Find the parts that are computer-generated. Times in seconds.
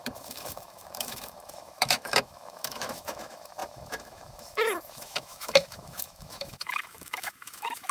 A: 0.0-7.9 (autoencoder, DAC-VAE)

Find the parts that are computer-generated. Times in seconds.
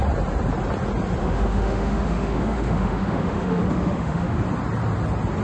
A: 1.2-4.4 (autoencoder, DAC-VAE)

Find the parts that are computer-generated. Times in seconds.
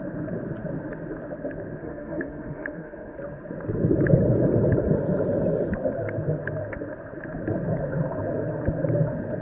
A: 1.8-3.2 (autoencoder, DAC-VAE)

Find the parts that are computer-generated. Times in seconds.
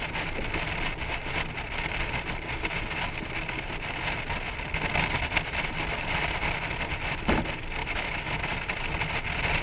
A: 7.8-8.4 (autoencoder, DAC-VAE)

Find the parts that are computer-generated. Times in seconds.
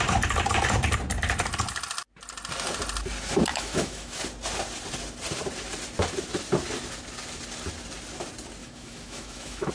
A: 3.5-4.2 (autoencoder, DAC-VAE); 8.6-9.7